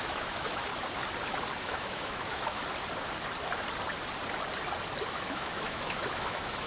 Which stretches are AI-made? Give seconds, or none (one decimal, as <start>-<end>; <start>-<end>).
0.0-0.7; 1.6-2.6; 5.1-6.7